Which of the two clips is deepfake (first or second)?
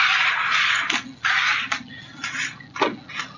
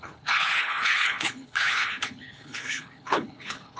second